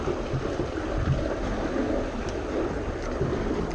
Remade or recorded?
recorded